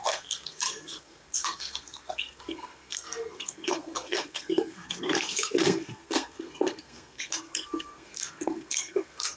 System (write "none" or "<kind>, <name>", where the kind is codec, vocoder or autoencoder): codec, SNAC